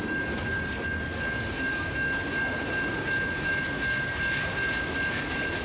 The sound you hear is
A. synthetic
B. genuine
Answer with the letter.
B